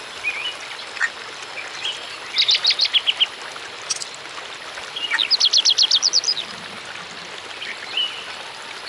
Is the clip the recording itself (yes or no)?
yes